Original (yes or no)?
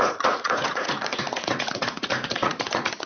no